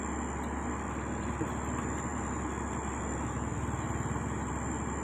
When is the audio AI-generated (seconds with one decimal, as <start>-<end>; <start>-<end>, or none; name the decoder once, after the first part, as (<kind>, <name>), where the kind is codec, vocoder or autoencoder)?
none